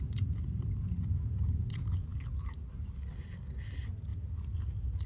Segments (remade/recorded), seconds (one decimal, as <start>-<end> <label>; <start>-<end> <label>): 0.0-5.1 recorded